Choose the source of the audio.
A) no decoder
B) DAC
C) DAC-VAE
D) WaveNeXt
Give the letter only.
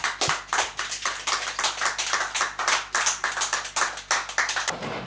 A